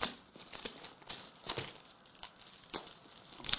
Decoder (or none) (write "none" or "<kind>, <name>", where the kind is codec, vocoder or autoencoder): none